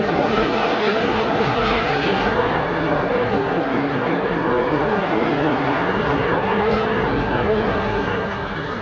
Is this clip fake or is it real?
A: fake